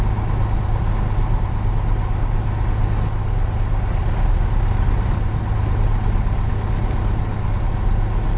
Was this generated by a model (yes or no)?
no